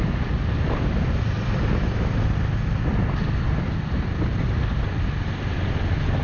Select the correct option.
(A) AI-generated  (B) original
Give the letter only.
B